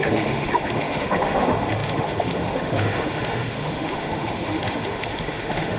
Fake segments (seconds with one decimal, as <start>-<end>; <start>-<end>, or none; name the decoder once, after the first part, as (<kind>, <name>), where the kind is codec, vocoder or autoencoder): 0.0-5.8 (autoencoder, DAC-VAE)